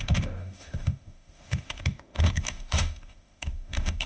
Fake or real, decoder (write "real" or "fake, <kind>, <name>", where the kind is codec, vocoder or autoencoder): fake, autoencoder, DAC-VAE